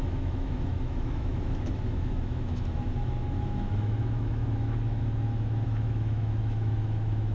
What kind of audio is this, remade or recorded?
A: remade